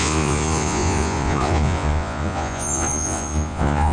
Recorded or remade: remade